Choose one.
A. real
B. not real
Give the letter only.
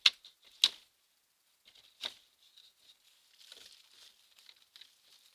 A